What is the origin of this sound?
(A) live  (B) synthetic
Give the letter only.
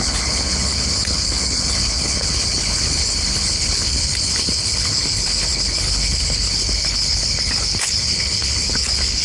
B